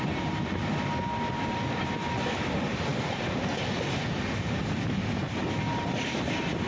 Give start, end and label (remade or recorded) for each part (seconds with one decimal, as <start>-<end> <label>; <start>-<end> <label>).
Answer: 0.0-6.7 recorded